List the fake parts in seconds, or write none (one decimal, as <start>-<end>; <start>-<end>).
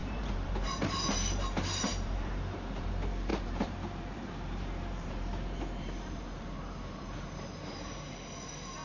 0.0-2.9; 3.3-8.0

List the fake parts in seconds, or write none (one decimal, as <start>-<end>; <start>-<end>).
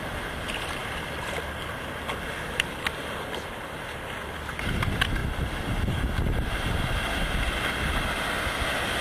none